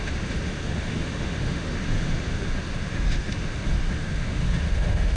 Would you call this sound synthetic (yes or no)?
yes